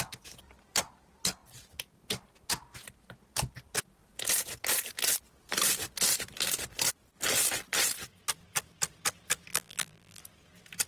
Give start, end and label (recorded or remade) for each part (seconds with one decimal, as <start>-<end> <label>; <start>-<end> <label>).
0.0-9.5 recorded; 9.5-10.2 remade; 10.2-10.9 recorded